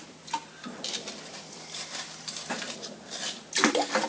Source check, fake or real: real